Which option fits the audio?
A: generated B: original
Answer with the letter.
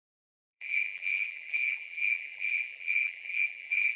A